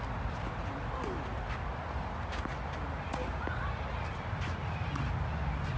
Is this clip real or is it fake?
real